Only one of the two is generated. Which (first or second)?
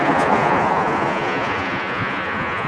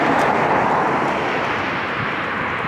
first